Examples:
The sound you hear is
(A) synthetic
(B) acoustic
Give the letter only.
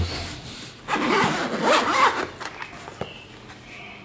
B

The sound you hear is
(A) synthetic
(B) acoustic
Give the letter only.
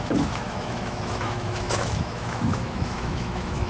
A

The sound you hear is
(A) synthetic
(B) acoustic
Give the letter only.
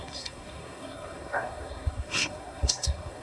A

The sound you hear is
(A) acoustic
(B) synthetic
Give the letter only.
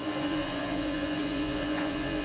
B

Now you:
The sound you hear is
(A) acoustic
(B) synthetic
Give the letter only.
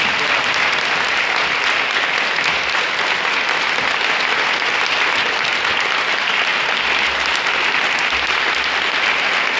A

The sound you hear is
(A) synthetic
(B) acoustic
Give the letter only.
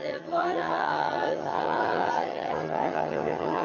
A